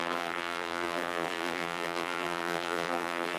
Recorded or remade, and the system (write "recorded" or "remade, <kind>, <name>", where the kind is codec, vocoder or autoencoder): remade, vocoder, BigVGAN v2